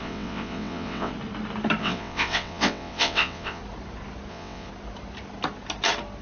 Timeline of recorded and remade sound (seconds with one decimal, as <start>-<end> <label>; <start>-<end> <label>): 0.0-1.1 remade; 1.1-1.8 recorded; 1.8-3.6 remade; 3.6-4.3 recorded; 4.3-4.7 remade; 4.7-6.2 recorded